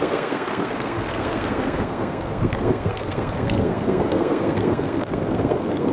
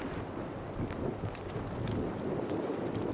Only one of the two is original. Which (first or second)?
second